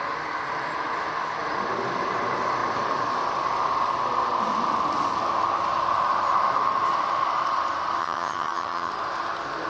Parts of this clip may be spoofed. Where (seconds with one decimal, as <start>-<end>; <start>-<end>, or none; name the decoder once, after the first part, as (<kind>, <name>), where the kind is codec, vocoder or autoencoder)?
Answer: 8.0-8.9 (vocoder, HiFi-GAN)